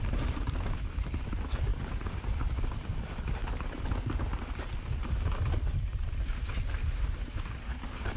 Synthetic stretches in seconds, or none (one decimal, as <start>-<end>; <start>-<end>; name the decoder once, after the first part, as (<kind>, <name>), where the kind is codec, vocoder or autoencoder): 0.0-3.4 (vocoder, BigVGAN v2); 5.7-8.2